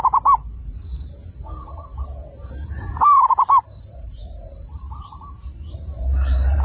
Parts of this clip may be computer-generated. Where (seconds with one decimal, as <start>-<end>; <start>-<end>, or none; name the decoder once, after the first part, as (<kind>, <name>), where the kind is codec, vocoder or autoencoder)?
0.0-1.2 (vocoder, BigVGAN v2); 2.5-6.6